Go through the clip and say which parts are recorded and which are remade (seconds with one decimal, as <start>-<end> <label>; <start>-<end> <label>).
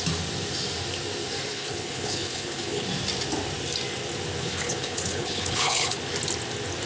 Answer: 0.0-1.5 recorded; 1.5-2.9 remade; 2.9-4.4 recorded; 4.4-6.0 remade; 6.0-6.9 recorded